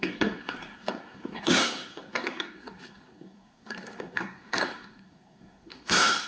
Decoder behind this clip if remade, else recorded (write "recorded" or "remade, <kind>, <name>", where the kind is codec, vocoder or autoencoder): remade, codec, SNAC